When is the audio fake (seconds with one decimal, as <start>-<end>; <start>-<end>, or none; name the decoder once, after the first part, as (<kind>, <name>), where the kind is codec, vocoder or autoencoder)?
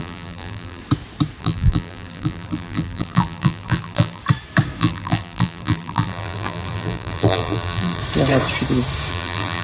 0.0-0.8 (vocoder, BigVGAN v2); 1.4-4.2; 4.8-8.0; 9.1-9.6